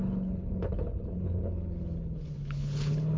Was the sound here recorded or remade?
remade